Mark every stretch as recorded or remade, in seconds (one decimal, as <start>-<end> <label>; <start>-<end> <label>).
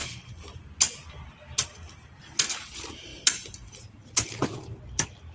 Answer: 0.0-5.3 recorded